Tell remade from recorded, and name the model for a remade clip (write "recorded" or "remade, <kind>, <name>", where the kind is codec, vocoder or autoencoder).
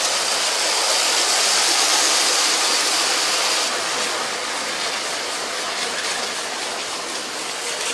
recorded